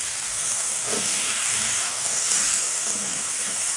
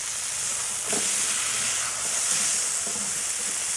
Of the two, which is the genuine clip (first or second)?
second